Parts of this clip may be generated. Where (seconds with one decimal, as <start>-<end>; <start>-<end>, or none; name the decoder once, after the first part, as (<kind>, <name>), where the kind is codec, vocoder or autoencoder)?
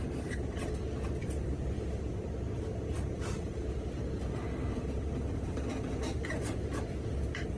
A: none